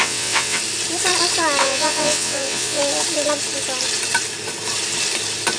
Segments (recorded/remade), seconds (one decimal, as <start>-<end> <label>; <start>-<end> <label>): 0.0-0.6 remade; 0.6-1.6 recorded; 1.6-2.8 remade; 2.8-5.6 recorded

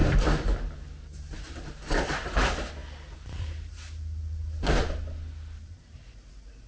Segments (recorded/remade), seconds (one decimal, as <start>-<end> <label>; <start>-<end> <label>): 0.0-6.7 recorded

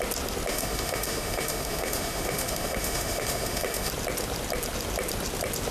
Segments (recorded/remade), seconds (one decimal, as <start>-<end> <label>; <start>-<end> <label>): 0.0-0.5 recorded; 0.5-3.9 remade; 3.9-5.7 recorded

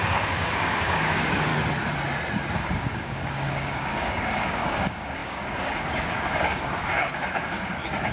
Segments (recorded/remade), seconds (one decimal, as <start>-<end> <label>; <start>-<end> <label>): 0.0-1.5 remade; 1.5-2.5 recorded; 2.5-8.1 remade